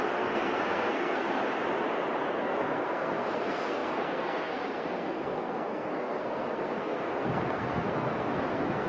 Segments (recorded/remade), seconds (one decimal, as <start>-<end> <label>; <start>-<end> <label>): 0.0-1.4 remade; 1.4-2.4 recorded; 2.4-8.9 remade